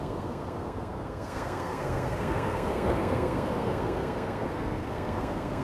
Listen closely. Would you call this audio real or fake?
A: fake